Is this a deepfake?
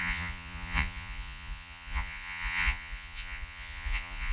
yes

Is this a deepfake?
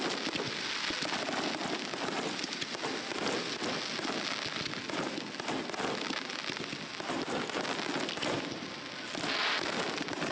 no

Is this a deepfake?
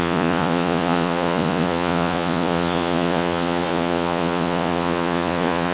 yes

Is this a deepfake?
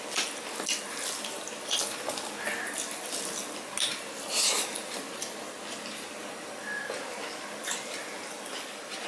no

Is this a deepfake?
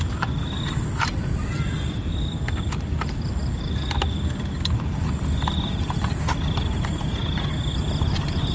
no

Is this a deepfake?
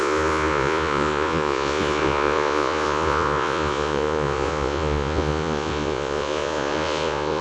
yes